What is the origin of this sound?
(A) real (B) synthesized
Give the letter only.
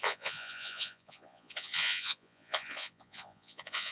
B